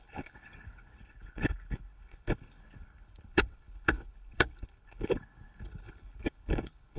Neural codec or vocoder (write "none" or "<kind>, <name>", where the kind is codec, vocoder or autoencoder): codec, HILCodec